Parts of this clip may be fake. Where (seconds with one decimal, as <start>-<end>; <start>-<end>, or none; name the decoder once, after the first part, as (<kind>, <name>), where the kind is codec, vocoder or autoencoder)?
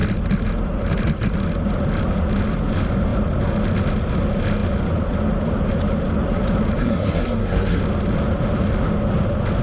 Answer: 6.8-7.8 (codec, SNAC)